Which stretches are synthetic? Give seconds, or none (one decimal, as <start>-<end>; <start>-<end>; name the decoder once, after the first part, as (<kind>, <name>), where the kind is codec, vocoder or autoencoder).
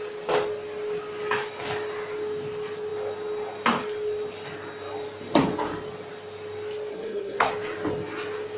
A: 6.9-7.5 (codec, SNAC)